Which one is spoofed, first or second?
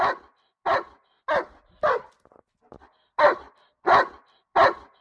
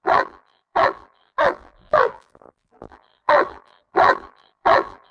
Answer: second